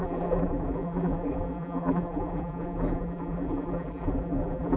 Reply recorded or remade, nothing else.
remade